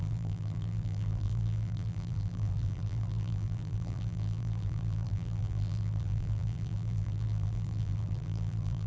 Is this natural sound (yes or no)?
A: no